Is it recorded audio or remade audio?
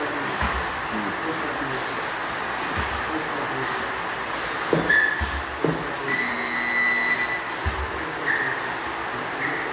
recorded